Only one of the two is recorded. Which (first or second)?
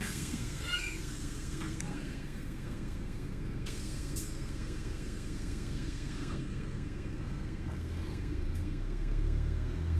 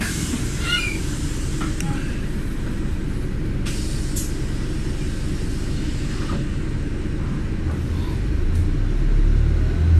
second